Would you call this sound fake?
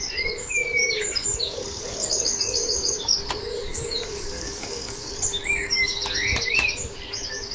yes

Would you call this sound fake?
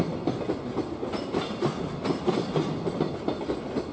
no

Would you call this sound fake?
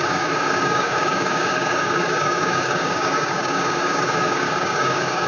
yes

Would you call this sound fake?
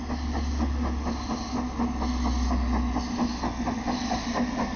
no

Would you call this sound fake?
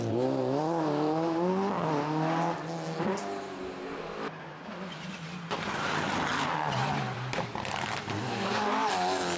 no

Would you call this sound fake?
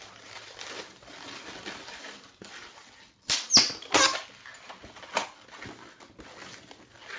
no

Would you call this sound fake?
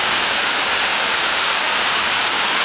yes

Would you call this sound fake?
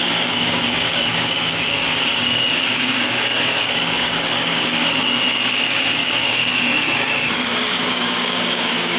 yes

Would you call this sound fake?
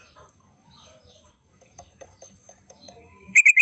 yes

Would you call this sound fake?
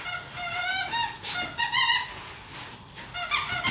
no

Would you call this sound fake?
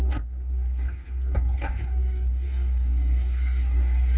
yes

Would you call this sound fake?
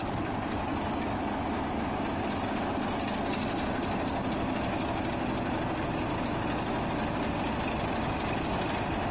no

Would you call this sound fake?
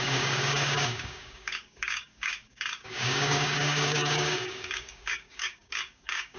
yes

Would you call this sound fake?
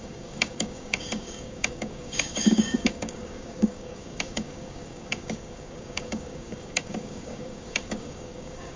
yes